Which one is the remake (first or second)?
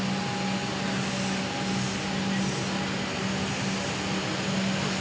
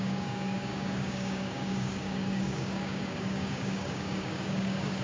second